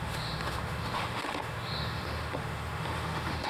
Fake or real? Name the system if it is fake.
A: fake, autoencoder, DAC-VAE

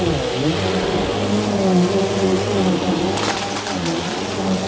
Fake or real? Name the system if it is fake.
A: real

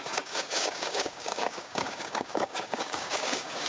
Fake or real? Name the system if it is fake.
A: fake, codec, DAC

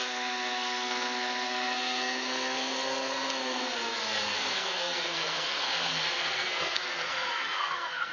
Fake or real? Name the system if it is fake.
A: fake, codec, SNAC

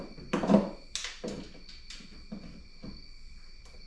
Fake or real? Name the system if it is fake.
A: real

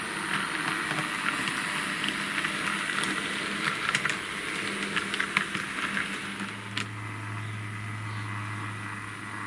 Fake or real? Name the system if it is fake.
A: real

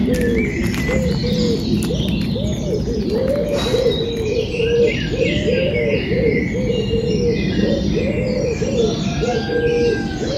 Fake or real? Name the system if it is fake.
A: real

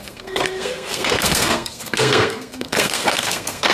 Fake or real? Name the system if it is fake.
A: fake, codec, SNAC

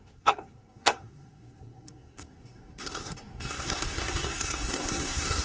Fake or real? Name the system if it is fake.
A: fake, codec, SNAC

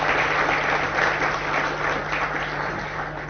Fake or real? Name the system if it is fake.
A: real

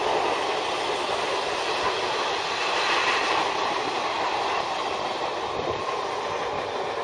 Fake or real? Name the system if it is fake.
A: real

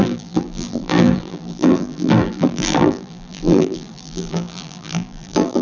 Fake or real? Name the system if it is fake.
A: fake, vocoder, BigVGAN v2